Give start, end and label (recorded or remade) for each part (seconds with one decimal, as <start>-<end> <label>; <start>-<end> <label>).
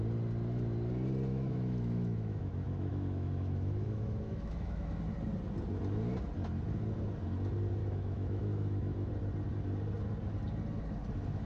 0.0-1.3 recorded; 1.3-5.0 remade; 5.0-7.8 recorded; 7.8-9.1 remade; 9.1-11.5 recorded